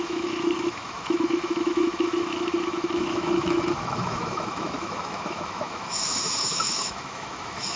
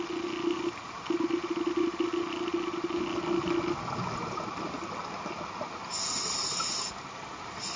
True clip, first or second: second